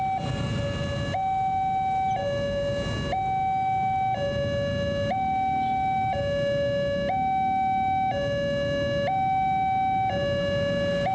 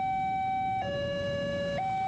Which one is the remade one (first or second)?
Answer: second